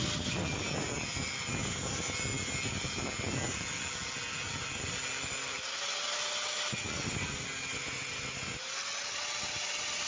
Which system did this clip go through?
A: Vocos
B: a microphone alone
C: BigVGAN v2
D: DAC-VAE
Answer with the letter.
B